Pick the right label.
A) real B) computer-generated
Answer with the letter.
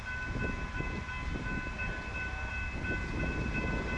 A